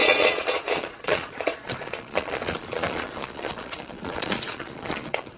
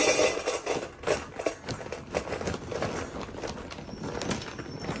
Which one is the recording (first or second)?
second